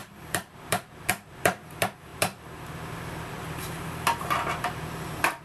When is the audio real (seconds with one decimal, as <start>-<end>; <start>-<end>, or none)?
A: none